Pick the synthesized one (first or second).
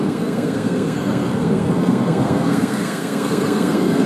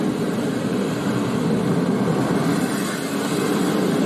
first